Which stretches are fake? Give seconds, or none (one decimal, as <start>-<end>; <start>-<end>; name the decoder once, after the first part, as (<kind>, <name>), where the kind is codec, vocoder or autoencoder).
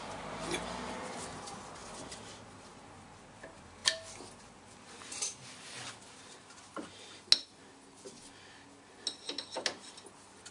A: none